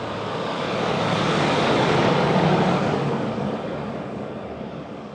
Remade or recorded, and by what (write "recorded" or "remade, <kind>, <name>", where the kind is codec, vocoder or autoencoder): remade, codec, DAC